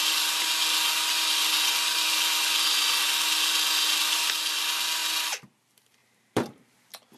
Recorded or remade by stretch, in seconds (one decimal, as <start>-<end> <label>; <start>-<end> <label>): 0.0-6.0 recorded; 6.0-6.6 remade; 6.6-7.2 recorded